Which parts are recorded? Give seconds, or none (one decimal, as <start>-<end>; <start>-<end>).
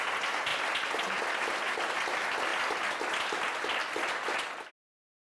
0.0-5.3